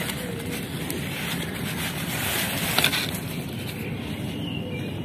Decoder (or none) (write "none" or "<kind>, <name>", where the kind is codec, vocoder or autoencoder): none